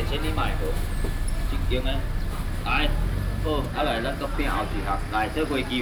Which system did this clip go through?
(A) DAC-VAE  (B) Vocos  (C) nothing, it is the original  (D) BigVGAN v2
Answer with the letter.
C